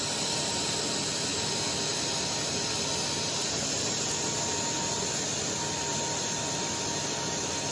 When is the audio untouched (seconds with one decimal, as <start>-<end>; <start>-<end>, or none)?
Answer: 0.0-7.7

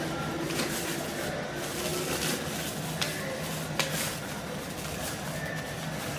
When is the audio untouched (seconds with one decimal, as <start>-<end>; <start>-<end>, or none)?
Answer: 0.0-6.2

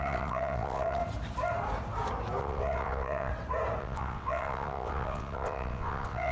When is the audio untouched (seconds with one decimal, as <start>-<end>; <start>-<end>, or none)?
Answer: 1.0-2.4; 3.3-3.8

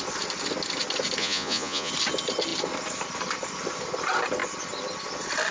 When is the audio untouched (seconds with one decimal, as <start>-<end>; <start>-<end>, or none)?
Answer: 0.0-1.2; 1.9-5.5

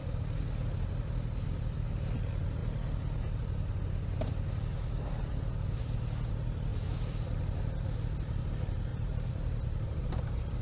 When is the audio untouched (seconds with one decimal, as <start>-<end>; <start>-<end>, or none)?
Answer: 0.0-8.9

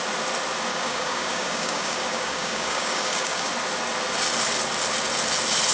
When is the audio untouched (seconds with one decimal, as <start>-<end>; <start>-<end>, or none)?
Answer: 0.0-0.7; 3.5-5.7